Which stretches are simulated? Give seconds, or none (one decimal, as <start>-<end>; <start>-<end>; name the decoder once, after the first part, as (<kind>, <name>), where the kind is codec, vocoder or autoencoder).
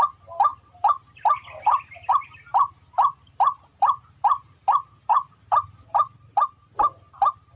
none